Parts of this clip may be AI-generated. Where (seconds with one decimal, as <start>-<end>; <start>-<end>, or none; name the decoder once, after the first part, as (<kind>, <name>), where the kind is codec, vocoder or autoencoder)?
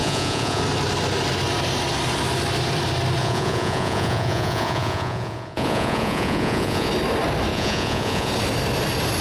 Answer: 0.0-0.6 (vocoder, Vocos); 3.2-6.9; 7.5-8.3